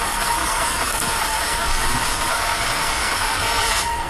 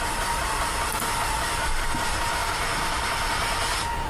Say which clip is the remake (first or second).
first